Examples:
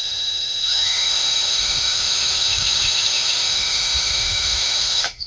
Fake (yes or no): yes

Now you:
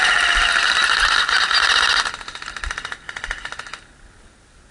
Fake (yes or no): no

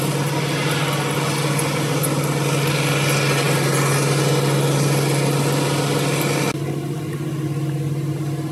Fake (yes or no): no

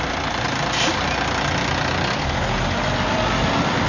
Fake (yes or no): no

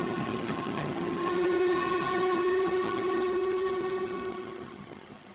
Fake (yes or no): yes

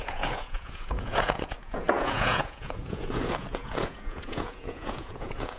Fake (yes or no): yes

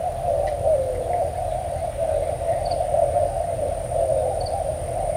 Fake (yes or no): no